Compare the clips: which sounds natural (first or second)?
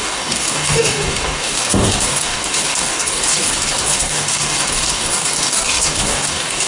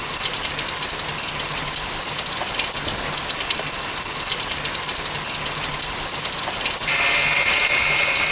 second